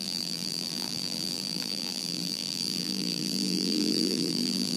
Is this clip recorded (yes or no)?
no